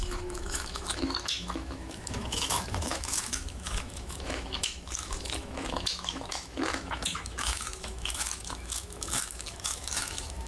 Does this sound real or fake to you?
fake